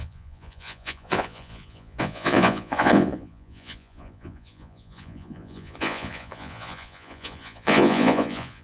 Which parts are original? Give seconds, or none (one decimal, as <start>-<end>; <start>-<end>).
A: none